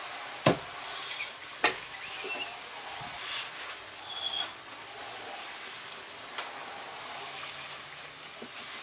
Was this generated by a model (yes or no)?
no